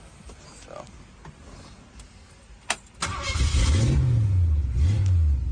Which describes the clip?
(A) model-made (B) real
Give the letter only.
B